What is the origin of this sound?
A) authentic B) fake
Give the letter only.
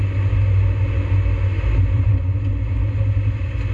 A